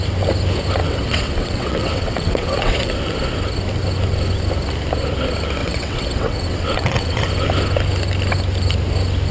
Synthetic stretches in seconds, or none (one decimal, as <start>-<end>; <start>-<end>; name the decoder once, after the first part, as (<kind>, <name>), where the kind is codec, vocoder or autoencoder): 0.8-2.9 (vocoder, WaveNeXt); 5.6-7.2